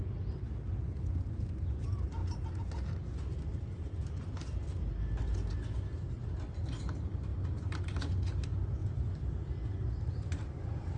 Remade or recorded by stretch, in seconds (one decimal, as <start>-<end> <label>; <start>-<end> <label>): 0.0-7.3 recorded; 7.3-8.1 remade; 8.1-11.0 recorded